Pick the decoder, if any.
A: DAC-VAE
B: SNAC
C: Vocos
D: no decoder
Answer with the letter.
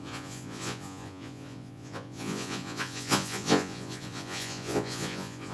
C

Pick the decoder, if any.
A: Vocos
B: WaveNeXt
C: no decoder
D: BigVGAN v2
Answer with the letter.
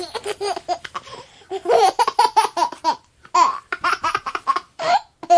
D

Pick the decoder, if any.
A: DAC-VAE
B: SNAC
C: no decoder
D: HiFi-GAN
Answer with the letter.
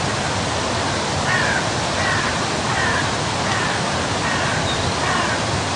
C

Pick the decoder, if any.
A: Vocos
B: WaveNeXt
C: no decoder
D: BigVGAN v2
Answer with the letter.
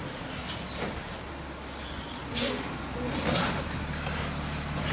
C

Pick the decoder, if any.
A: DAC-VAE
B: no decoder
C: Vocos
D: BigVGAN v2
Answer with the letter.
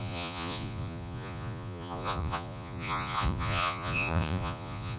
C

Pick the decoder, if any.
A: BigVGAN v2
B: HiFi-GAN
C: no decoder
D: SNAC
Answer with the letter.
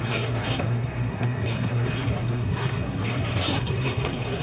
D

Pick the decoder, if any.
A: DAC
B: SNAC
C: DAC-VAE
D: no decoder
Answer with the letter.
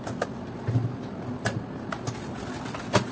D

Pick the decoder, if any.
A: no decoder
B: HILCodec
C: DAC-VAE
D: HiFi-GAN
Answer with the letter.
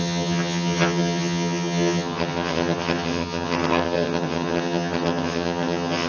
D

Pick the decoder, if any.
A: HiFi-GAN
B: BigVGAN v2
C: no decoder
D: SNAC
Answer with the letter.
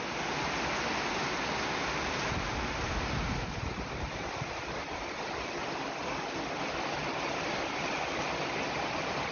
C